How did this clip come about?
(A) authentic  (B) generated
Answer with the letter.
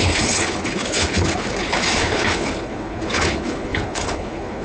B